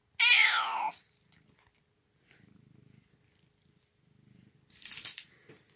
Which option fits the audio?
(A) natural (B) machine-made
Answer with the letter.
A